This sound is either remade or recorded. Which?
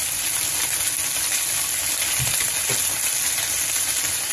recorded